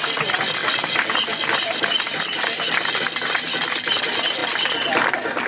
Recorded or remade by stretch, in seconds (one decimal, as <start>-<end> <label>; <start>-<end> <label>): 0.0-5.5 recorded